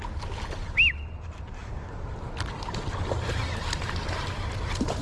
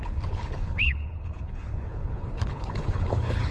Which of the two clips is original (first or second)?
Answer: first